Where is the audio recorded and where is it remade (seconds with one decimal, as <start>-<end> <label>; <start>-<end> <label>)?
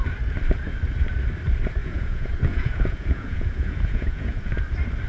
0.0-1.8 recorded; 1.8-4.6 remade; 4.6-5.1 recorded